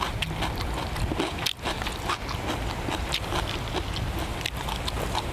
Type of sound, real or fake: real